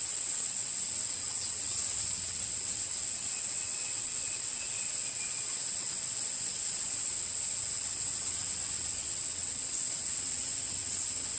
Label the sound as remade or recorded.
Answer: remade